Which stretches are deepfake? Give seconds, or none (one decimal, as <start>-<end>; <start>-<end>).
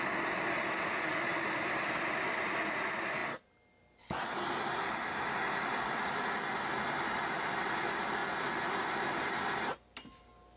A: none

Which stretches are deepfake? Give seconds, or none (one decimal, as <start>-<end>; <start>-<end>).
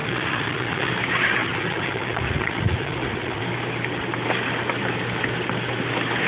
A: 0.0-0.9; 1.4-3.4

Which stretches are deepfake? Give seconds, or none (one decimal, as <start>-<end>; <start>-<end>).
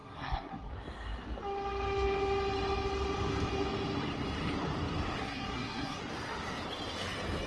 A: 0.0-0.7; 5.2-6.0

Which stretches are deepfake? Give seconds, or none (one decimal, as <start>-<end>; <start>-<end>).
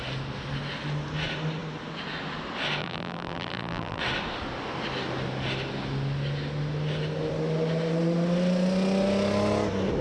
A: 2.8-4.0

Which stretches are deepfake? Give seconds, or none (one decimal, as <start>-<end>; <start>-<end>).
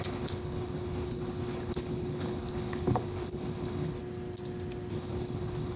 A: 0.0-4.0; 4.9-5.8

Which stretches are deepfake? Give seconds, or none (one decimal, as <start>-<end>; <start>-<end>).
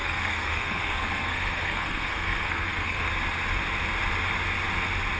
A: 0.0-3.1